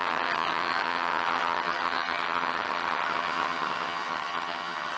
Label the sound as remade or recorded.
remade